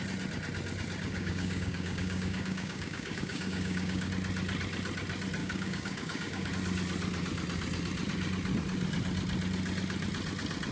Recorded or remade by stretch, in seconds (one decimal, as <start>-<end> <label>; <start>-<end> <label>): 0.0-1.1 recorded; 1.1-4.1 remade; 4.1-5.4 recorded; 5.4-6.5 remade; 6.5-10.7 recorded